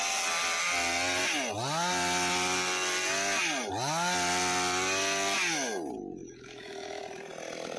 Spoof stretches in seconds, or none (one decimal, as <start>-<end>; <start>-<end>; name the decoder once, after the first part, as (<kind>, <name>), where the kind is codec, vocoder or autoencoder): 6.2-7.0 (autoencoder, DAC-VAE)